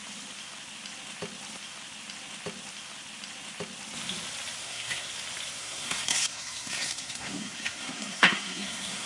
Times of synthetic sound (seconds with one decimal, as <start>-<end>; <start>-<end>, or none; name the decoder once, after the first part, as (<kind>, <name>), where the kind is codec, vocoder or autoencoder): 4.6-5.1 (codec, SNAC); 5.6-9.1